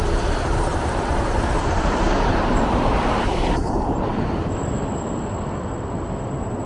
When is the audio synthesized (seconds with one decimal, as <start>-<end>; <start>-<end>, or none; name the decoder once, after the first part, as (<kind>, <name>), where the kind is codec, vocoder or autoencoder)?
0.7-4.7 (vocoder, BigVGAN v2)